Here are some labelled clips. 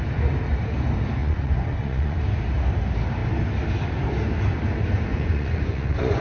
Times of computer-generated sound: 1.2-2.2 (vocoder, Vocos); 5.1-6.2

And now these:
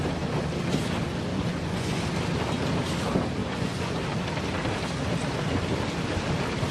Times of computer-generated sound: 1.3-2.0 (vocoder, Vocos); 3.4-4.0

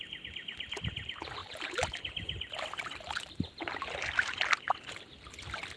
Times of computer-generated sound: none

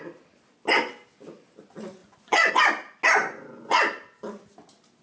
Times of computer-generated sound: 2.0-2.5 (vocoder, Vocos); 3.2-3.8